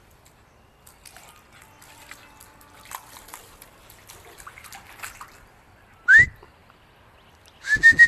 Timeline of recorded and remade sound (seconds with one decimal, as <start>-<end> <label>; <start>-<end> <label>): 0.0-8.1 recorded